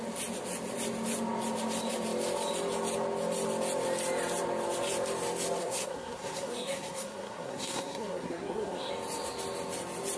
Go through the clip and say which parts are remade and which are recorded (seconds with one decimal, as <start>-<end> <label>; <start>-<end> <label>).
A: 0.0-5.6 recorded; 5.6-8.9 remade; 8.9-10.2 recorded